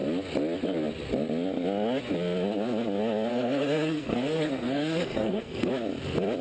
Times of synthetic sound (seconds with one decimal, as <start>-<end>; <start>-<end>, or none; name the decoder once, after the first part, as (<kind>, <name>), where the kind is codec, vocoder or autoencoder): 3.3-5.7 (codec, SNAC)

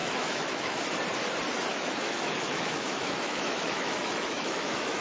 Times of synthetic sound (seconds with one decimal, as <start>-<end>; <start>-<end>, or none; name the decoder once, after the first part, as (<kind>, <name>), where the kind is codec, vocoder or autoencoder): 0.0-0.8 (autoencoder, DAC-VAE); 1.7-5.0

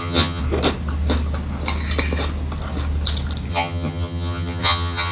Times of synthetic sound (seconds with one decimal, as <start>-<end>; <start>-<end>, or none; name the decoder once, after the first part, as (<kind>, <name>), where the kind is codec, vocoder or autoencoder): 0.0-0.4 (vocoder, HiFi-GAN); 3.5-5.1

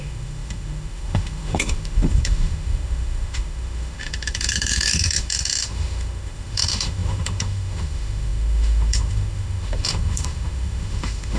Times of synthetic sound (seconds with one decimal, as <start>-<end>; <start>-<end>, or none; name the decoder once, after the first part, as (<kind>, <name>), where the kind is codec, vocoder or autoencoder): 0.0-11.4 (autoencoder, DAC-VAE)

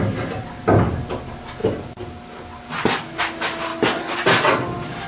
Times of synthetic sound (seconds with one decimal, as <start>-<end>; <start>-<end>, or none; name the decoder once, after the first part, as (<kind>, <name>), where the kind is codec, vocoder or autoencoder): none

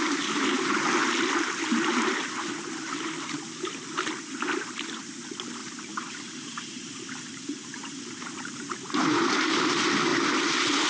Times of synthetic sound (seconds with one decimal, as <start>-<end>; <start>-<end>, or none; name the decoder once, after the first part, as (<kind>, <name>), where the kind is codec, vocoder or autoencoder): 5.6-8.3 (vocoder, BigVGAN v2)